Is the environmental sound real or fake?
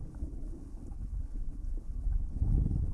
fake